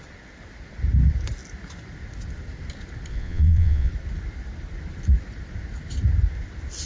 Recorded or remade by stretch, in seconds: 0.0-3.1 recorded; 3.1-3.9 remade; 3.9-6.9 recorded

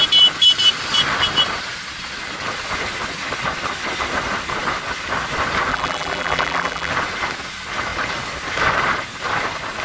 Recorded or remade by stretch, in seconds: 0.0-5.7 recorded; 5.7-6.9 remade; 6.9-9.8 recorded

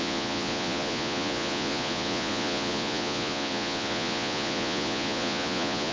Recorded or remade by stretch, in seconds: 0.0-5.9 remade

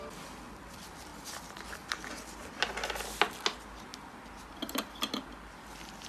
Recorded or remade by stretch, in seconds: 0.0-6.1 recorded

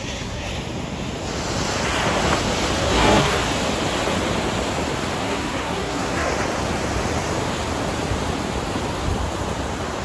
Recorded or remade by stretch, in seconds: 0.0-0.5 remade; 0.5-2.8 recorded; 2.8-3.4 remade; 3.4-5.2 recorded; 5.2-6.3 remade; 6.3-10.0 recorded

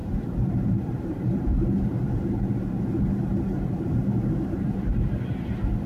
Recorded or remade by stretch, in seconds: 0.0-2.8 remade; 2.8-3.3 recorded; 3.3-4.9 remade; 4.9-5.9 recorded